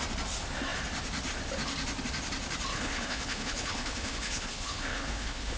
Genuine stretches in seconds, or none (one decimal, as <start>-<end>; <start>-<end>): 0.0-2.7